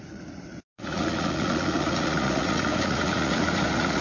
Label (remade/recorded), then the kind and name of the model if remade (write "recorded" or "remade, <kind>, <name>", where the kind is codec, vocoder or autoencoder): remade, vocoder, Vocos